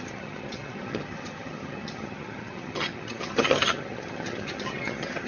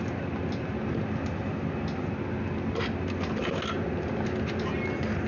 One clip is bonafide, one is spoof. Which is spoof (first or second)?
first